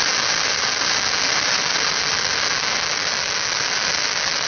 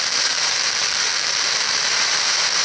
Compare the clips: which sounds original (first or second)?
first